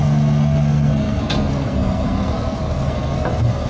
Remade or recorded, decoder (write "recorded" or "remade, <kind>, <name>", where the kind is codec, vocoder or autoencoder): remade, codec, SNAC